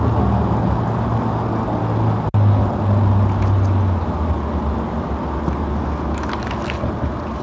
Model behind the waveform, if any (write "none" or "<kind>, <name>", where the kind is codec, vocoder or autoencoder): none